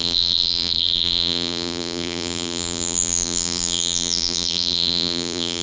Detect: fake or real fake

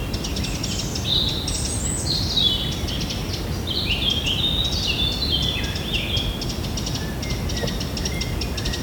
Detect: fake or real real